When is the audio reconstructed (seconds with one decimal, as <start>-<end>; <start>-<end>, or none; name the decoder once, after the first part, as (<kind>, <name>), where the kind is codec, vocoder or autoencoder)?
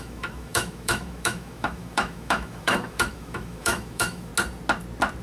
0.0-4.3 (autoencoder, DAC-VAE)